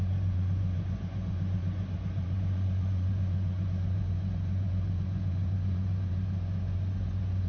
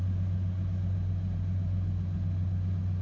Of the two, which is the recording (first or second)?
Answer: second